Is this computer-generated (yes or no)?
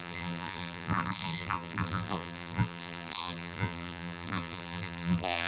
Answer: yes